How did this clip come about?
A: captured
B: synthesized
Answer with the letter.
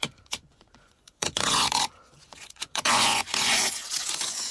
B